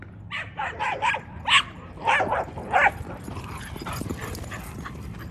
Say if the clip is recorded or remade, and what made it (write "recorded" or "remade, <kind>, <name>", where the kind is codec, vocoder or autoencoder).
recorded